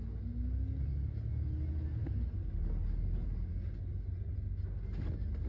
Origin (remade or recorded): recorded